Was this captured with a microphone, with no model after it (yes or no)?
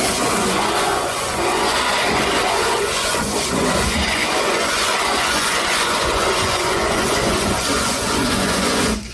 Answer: no